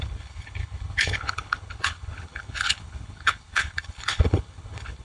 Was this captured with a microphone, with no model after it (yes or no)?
no